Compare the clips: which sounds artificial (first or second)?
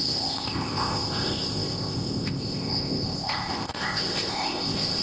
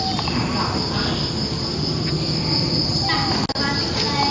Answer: first